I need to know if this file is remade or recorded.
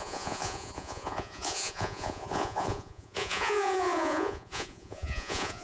remade